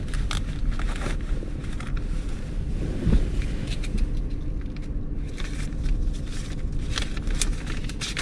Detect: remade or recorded recorded